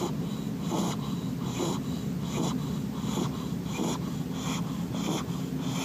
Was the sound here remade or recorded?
recorded